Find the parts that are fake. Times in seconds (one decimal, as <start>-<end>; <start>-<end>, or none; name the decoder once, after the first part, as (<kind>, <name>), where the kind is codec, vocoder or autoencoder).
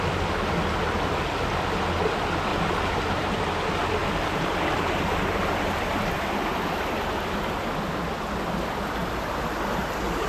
2.5-3.3 (vocoder, BigVGAN v2); 4.0-5.8